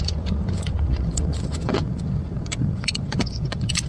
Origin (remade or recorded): remade